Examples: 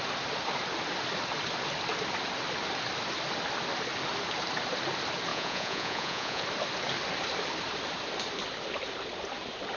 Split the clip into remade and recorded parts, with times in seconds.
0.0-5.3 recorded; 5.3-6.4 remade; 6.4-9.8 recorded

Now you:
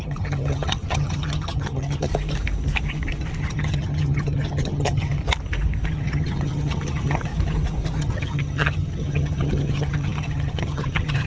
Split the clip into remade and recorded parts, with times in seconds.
0.0-2.1 remade; 2.1-3.4 recorded; 3.4-5.2 remade; 5.2-5.9 recorded; 5.9-7.3 remade; 7.3-8.0 recorded; 8.0-11.3 remade